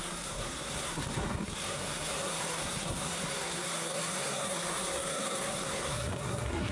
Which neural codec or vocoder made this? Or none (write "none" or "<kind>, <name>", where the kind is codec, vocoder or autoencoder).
codec, SNAC